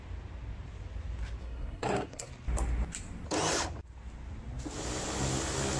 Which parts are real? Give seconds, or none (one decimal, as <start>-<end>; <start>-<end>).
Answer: 0.0-1.4; 2.3-5.8